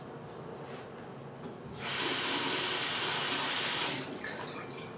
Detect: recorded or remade recorded